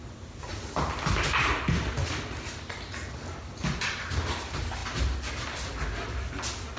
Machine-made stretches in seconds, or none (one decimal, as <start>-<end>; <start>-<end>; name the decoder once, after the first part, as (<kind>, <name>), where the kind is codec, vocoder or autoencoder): none